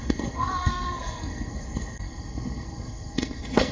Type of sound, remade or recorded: remade